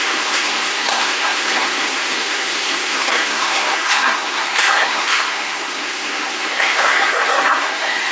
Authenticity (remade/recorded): remade